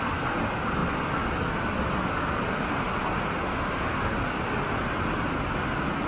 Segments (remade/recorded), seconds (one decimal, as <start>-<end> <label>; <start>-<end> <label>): 0.0-6.1 recorded